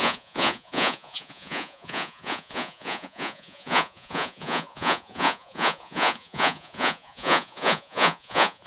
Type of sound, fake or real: fake